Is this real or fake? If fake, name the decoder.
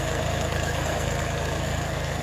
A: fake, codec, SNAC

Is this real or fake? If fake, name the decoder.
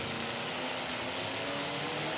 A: real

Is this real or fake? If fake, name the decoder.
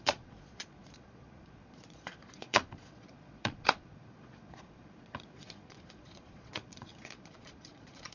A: fake, vocoder, Vocos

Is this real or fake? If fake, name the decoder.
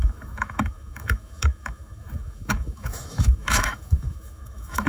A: fake, autoencoder, DAC-VAE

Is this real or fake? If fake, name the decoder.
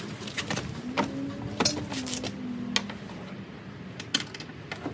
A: real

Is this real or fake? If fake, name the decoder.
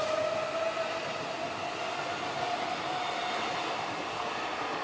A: real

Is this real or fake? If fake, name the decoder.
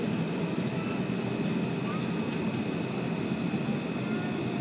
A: real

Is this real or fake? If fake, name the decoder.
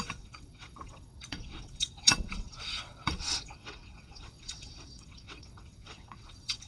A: fake, vocoder, WaveNeXt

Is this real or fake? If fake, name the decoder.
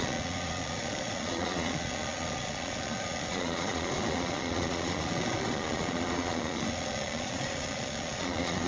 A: fake, vocoder, Vocos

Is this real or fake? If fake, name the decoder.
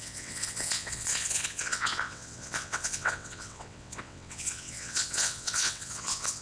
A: fake, vocoder, WaveNeXt